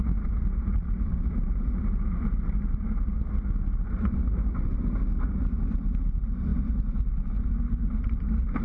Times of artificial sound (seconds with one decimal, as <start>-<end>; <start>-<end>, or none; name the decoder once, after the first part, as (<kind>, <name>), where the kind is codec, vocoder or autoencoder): none

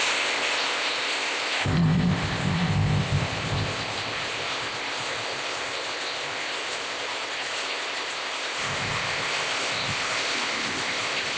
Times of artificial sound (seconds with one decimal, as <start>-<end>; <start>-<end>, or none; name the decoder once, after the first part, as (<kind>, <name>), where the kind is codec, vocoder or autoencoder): 0.0-11.4 (codec, ZipCodec)

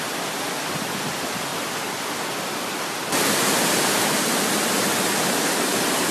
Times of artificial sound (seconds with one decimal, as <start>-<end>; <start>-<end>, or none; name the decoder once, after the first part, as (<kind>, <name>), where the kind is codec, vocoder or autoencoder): 0.0-1.5 (vocoder, BigVGAN v2); 5.2-6.1

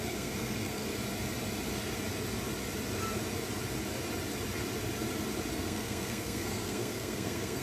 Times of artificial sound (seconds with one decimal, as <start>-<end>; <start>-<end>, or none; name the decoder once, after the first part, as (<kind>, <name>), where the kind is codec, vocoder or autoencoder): 0.0-0.9 (codec, SNAC); 5.5-7.6

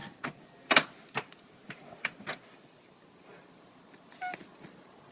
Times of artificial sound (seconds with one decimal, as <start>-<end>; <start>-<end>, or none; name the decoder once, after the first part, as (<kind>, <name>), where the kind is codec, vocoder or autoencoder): none

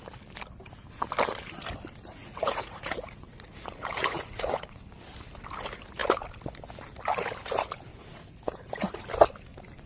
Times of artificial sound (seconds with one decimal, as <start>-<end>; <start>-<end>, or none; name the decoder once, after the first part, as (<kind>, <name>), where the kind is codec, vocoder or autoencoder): 2.2-4.8 (vocoder, Vocos); 7.9-9.0

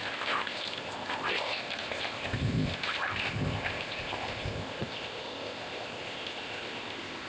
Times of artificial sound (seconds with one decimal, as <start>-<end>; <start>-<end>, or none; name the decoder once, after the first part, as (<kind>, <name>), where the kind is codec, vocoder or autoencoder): 0.0-7.3 (codec, ZipCodec)